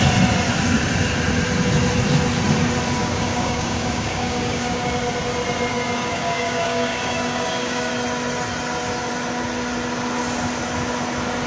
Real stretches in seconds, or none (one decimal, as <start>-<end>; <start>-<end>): 0.0-3.0; 4.9-5.7; 7.9-11.5